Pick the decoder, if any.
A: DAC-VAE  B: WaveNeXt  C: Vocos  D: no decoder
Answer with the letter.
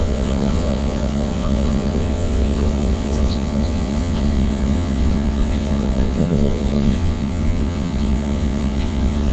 B